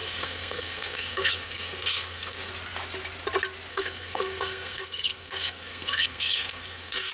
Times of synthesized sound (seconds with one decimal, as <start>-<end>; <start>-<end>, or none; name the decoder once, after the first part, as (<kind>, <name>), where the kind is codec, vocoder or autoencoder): 0.0-2.5 (codec, SNAC); 3.7-7.1